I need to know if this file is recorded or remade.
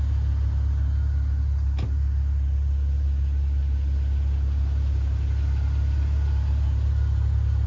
recorded